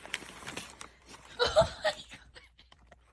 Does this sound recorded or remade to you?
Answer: remade